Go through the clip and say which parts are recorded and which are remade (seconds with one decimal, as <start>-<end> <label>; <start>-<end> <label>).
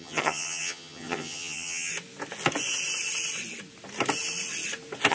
0.0-1.9 remade; 1.9-5.1 recorded